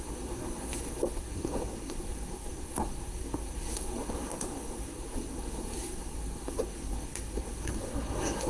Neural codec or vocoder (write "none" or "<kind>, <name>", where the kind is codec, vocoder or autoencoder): codec, SNAC